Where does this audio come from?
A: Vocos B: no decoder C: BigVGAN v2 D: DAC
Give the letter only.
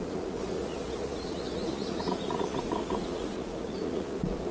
A